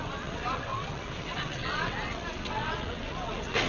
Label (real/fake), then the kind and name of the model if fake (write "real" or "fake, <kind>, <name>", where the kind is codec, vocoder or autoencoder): fake, vocoder, WaveNeXt